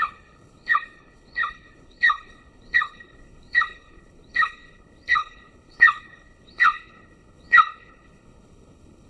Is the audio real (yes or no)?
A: no